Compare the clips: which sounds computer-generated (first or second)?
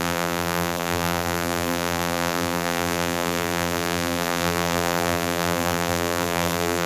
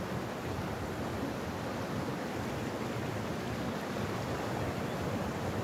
first